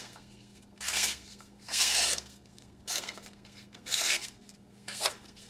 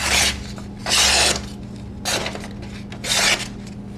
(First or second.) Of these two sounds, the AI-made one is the first